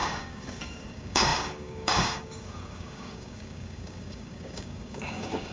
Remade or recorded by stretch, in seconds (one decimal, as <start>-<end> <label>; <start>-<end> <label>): 0.0-5.5 remade